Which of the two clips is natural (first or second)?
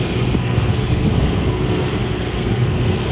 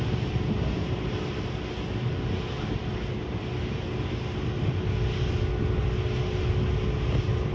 second